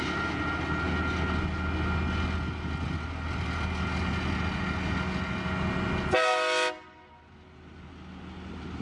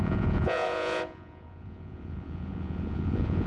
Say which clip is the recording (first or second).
first